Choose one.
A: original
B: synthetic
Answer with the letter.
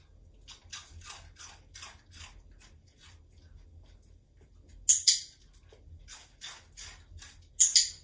A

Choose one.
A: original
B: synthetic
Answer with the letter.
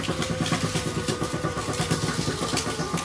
A